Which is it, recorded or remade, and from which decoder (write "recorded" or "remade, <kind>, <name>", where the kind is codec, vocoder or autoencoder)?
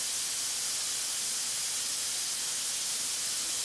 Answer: recorded